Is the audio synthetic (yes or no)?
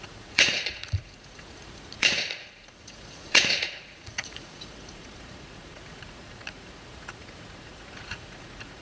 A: yes